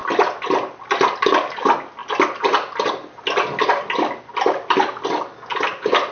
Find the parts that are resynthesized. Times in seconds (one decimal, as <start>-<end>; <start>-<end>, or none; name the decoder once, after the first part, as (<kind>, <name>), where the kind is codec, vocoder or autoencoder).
none